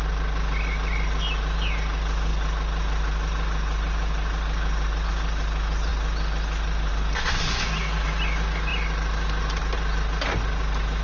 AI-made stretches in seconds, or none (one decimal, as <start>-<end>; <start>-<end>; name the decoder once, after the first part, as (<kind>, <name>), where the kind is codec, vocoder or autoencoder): none